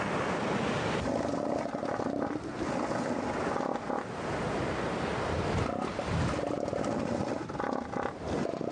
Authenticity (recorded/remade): recorded